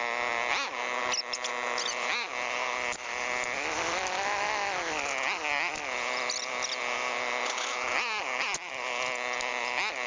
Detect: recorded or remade recorded